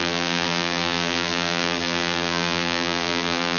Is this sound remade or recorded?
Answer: remade